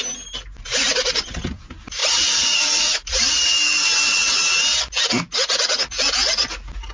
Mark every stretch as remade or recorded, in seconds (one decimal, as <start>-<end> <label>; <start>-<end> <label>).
0.0-2.0 recorded; 2.0-3.3 remade; 3.3-6.9 recorded